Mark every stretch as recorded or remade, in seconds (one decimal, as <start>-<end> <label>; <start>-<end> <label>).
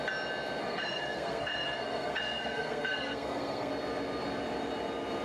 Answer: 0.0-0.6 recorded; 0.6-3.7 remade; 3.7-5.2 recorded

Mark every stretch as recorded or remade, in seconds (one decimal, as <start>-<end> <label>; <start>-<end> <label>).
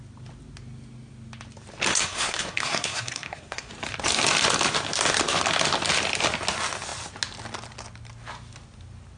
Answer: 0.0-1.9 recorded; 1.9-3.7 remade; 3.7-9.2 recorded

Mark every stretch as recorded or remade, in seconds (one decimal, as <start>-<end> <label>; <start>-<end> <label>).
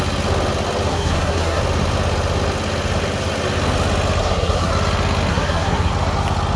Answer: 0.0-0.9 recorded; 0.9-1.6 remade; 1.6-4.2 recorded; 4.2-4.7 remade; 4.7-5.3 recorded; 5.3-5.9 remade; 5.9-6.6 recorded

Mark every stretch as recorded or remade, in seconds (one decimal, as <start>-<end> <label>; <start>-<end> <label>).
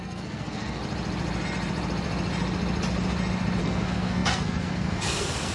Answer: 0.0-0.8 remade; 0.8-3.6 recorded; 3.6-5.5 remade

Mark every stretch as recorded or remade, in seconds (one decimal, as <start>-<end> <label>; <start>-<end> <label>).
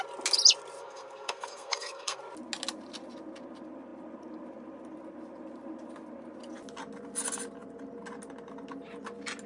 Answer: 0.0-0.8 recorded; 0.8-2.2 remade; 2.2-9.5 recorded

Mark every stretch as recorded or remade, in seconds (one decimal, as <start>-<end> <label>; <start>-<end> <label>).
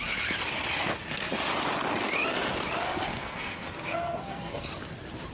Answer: 0.0-3.1 recorded; 3.1-4.7 remade; 4.7-5.3 recorded